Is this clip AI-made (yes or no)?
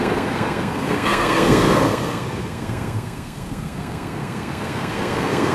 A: yes